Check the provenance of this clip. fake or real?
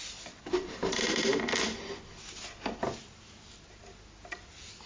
real